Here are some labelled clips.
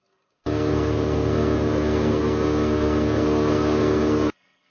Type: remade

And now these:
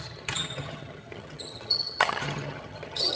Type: remade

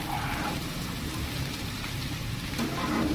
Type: remade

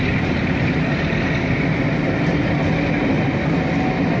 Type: recorded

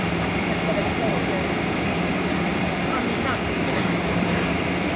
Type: remade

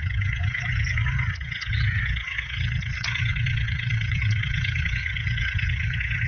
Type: remade